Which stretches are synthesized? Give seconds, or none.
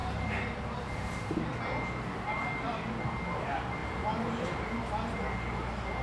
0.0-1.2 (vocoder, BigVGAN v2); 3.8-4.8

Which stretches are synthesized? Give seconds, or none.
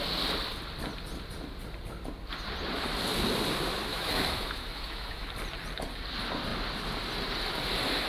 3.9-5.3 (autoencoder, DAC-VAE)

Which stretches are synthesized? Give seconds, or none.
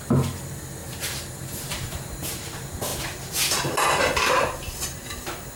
0.8-2.3 (vocoder, BigVGAN v2)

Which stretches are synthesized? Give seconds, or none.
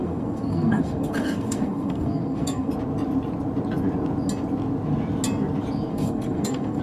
0.0-2.7 (codec, SNAC); 5.9-6.8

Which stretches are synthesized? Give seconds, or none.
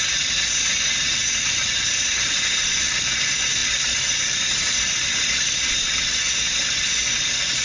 1.2-2.9 (vocoder, BigVGAN v2); 3.6-5.7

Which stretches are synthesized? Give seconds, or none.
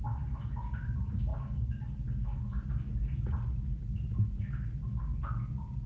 none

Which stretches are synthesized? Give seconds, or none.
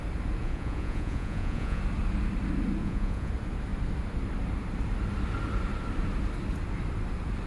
0.4-1.8 (vocoder, Vocos); 2.8-3.3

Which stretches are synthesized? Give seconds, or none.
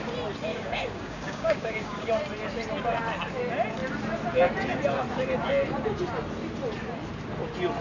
0.5-2.1 (codec, DAC)